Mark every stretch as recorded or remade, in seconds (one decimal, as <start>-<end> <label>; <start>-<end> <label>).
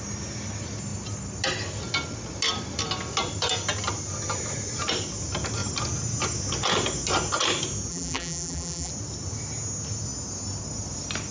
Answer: 0.0-7.9 recorded; 7.9-8.9 remade; 8.9-11.3 recorded